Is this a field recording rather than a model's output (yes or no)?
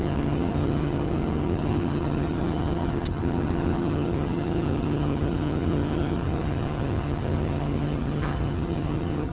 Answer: no